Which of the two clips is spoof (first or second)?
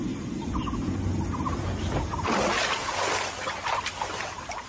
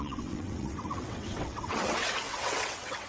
second